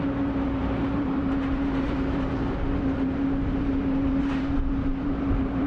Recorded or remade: remade